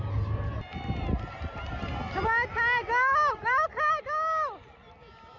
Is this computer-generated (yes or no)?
no